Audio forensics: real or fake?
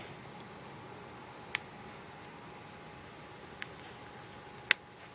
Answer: real